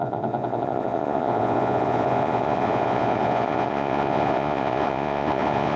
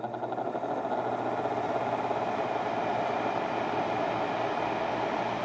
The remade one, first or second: first